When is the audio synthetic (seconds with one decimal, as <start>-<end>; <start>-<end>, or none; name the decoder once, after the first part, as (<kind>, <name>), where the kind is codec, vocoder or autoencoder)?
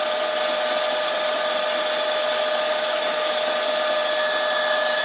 2.7-3.5 (autoencoder, DAC-VAE)